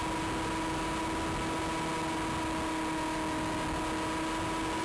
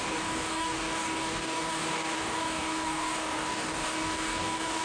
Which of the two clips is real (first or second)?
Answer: first